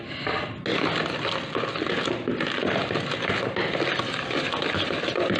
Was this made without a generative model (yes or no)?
yes